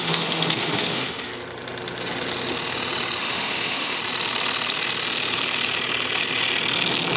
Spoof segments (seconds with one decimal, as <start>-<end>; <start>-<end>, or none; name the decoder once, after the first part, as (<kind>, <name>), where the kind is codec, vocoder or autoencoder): 0.0-1.3 (autoencoder, DAC-VAE); 3.2-4.0